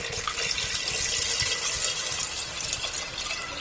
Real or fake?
real